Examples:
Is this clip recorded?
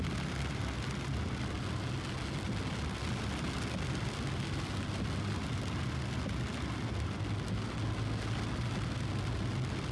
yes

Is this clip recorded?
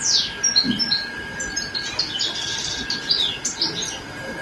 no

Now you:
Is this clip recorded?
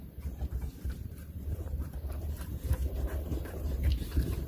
no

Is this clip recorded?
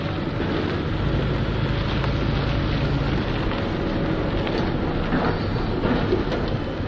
yes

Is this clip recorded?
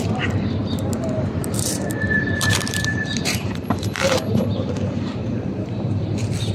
no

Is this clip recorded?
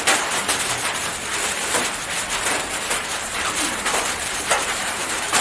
no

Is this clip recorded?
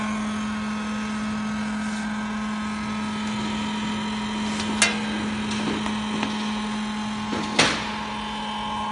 yes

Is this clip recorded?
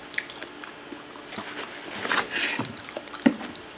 yes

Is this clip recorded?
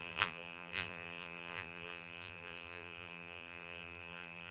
no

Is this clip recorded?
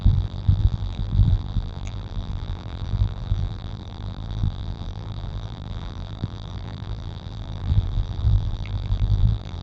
no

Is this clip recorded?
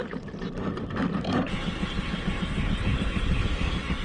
no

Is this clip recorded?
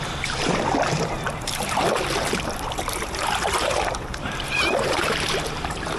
no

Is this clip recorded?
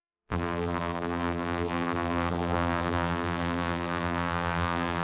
no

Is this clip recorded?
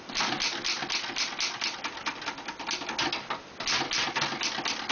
yes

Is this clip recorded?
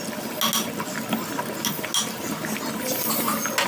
yes